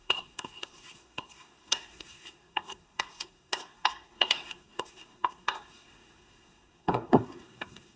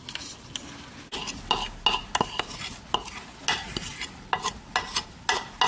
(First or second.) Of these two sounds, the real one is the second